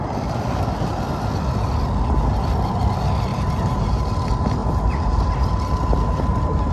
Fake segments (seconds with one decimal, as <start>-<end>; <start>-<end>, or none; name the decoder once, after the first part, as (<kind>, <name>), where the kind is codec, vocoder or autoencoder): 3.3-3.9 (vocoder, BigVGAN v2); 4.6-5.3